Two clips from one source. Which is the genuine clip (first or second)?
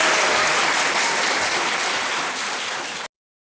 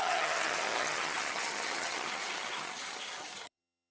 first